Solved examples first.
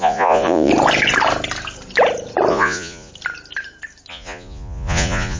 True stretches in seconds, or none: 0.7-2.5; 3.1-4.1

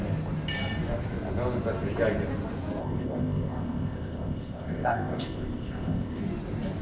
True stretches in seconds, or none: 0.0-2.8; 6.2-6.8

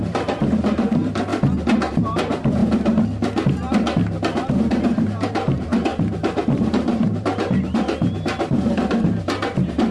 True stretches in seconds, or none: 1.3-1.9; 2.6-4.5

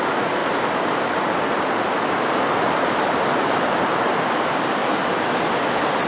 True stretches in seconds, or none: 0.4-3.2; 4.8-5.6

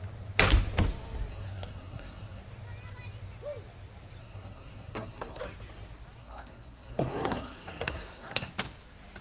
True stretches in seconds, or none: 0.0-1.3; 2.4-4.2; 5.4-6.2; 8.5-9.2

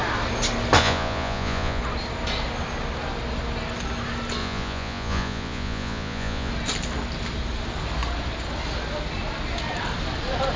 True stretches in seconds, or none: 0.0-0.8; 1.8-4.4; 6.5-10.6

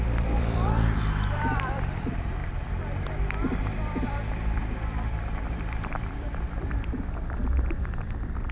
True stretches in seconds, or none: none